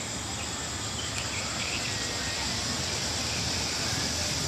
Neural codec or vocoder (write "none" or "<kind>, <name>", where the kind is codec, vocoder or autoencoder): none